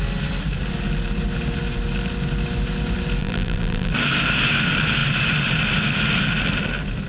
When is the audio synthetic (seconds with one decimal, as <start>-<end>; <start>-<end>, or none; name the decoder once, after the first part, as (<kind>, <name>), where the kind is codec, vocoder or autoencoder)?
3.2-3.9 (vocoder, BigVGAN v2)